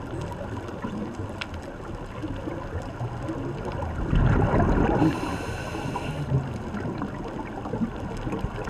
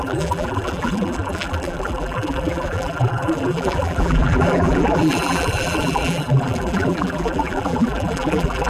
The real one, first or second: first